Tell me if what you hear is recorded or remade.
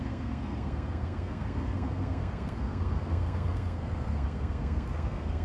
remade